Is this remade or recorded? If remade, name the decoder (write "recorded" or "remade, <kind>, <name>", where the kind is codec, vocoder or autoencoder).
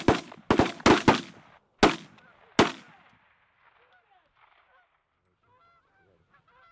recorded